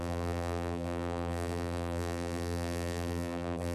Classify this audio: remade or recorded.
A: remade